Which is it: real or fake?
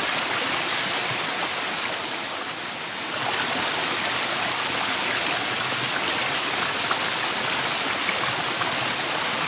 real